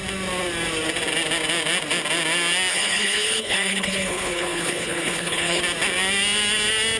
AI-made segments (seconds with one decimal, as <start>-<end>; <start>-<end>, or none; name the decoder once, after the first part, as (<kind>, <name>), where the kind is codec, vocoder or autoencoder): 2.7-5.6 (codec, HILCodec)